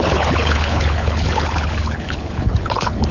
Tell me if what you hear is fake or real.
fake